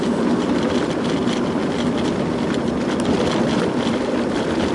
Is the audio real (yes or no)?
yes